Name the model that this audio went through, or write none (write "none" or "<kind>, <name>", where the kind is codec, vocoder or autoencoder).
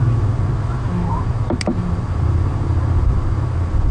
none